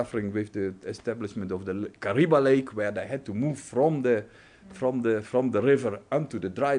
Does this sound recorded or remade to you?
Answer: recorded